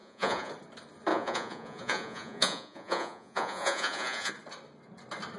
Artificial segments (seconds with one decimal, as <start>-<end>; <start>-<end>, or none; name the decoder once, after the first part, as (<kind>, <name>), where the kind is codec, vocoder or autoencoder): 0.0-0.5 (vocoder, Vocos); 1.1-4.3